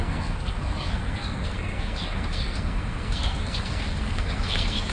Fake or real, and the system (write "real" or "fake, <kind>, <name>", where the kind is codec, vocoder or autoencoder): fake, codec, SNAC